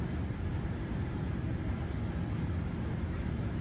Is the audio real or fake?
real